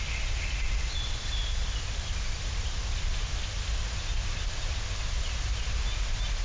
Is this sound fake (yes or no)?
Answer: no